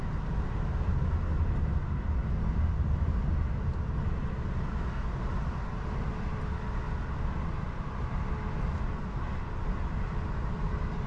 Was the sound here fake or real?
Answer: real